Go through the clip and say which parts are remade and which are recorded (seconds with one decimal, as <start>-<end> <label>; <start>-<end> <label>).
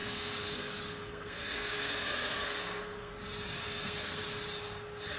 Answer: 0.0-3.1 remade; 3.1-3.6 recorded; 3.6-4.2 remade; 4.2-5.2 recorded